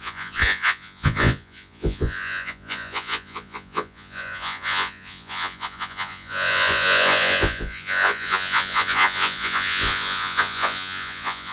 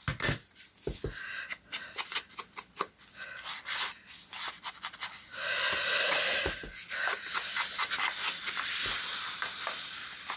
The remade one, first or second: first